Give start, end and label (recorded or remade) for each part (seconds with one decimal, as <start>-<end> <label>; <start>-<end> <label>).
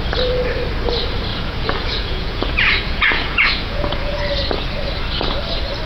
0.0-1.3 recorded; 1.3-4.2 remade; 4.2-5.9 recorded